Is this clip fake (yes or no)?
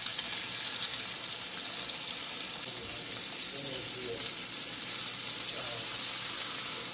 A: no